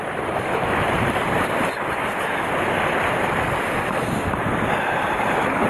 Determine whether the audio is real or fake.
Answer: real